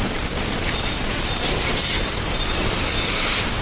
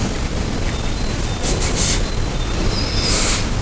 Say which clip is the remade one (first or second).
first